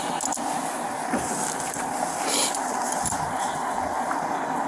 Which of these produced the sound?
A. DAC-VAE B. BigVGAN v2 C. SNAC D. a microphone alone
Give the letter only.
D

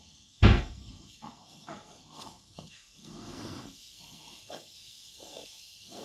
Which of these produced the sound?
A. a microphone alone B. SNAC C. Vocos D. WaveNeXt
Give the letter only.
B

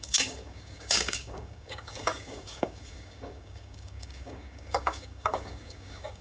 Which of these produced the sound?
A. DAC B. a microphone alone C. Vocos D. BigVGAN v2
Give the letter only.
A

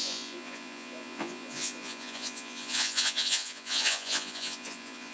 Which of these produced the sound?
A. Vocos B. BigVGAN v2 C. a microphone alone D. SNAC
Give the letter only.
A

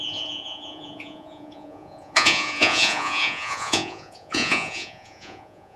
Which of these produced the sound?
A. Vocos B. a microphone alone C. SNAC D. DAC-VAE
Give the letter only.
A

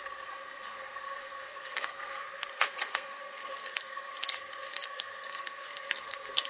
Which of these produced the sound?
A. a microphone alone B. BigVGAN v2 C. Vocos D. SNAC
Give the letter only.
D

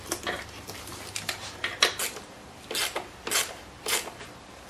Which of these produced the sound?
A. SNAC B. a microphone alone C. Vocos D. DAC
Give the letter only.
B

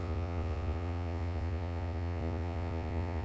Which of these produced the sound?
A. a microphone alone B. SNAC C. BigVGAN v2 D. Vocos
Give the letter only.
D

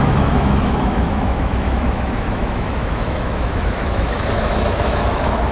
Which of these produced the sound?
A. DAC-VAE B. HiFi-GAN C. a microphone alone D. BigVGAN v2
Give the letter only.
A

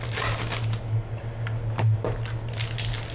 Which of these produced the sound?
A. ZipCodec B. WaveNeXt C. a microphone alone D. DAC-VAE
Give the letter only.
C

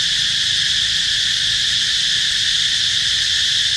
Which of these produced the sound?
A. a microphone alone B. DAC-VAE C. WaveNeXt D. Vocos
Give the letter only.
A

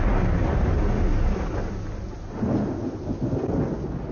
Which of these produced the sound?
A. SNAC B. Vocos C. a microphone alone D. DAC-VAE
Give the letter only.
C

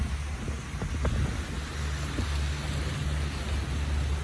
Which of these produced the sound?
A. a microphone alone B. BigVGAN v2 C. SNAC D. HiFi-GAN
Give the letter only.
A